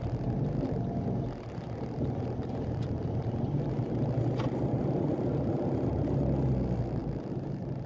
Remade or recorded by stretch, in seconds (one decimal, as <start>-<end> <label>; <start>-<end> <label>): 0.0-7.9 recorded